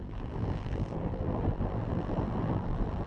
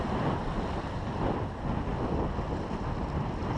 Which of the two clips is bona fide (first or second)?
second